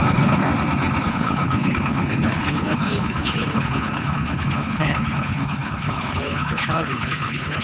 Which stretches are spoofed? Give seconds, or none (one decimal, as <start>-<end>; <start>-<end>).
0.0-0.4; 1.0-7.6